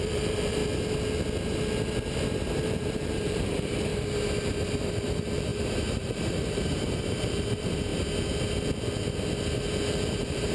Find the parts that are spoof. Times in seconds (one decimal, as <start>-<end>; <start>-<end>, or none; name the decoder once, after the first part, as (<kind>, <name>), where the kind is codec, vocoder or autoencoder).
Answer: 0.0-0.6 (vocoder, BigVGAN v2); 2.5-3.9; 4.9-7.9; 9.6-10.5